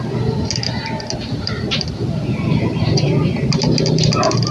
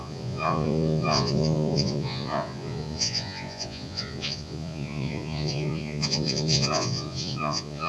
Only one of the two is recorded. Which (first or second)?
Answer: first